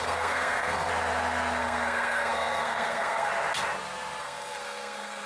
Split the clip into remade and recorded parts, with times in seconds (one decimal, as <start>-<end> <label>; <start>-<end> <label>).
0.0-0.9 remade; 0.9-1.6 recorded; 1.6-3.3 remade; 3.3-4.2 recorded; 4.2-5.3 remade